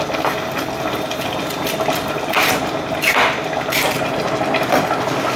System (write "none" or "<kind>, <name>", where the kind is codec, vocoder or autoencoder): none